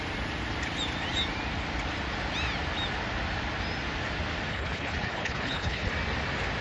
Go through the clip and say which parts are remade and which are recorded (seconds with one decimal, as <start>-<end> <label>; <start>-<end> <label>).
0.0-4.5 recorded; 4.5-5.9 remade; 5.9-6.6 recorded